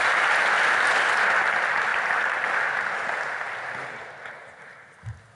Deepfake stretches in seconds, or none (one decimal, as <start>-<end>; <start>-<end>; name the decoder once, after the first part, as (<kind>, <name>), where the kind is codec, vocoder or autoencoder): 1.9-4.3 (vocoder, BigVGAN v2)